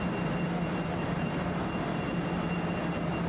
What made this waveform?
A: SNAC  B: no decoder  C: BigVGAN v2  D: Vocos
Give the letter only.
B